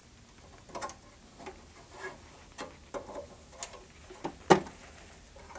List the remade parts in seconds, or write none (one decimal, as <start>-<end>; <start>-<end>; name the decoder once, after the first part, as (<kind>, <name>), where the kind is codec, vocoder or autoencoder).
none